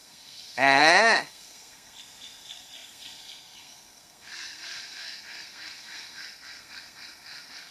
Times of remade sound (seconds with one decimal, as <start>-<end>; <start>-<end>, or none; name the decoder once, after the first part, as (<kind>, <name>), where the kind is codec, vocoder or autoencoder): 0.0-7.7 (codec, SNAC)